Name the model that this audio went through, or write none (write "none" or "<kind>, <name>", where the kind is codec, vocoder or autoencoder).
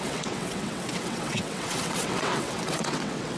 vocoder, WaveNeXt